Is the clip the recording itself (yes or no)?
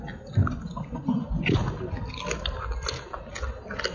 yes